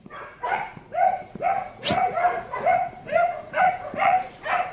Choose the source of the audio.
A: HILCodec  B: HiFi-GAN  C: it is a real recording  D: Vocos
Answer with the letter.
D